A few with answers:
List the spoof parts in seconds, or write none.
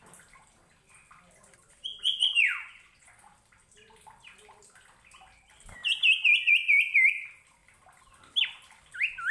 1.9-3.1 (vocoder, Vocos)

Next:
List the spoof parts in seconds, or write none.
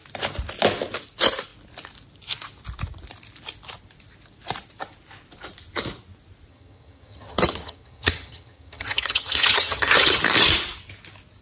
6.5-10.2 (vocoder, HiFi-GAN)